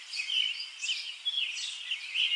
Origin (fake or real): real